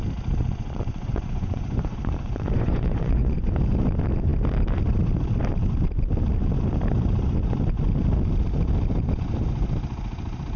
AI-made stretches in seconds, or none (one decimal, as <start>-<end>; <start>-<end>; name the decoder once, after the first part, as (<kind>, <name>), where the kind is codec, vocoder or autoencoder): 0.4-3.5 (vocoder, Vocos)